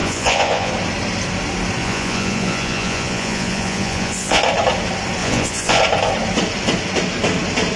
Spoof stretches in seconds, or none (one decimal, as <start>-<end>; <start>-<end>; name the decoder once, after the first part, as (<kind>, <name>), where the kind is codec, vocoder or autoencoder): 0.0-0.7 (vocoder, Vocos); 1.8-4.4; 5.2-5.8